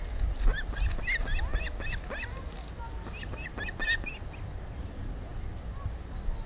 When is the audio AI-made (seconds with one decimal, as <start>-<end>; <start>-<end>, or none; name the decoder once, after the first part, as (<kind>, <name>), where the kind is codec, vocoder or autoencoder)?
none